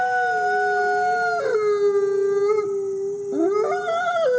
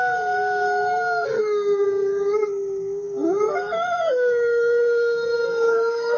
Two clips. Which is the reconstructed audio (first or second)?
second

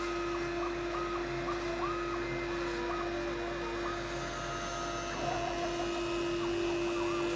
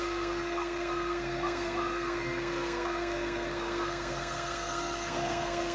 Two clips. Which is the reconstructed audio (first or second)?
second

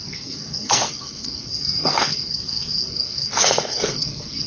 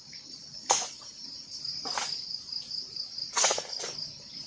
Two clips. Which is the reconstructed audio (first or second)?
first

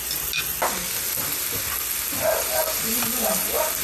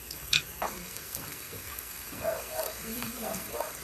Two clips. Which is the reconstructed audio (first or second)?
second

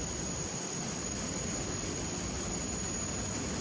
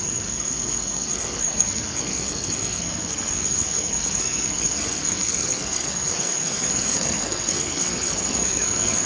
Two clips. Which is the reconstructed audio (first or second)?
second